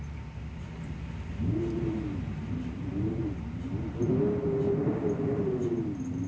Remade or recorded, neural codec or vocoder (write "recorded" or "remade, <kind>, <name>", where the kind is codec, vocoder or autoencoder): recorded